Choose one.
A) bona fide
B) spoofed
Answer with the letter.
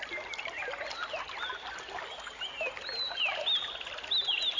A